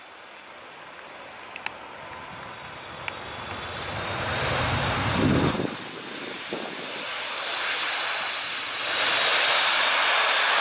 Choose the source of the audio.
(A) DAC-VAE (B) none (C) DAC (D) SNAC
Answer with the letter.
B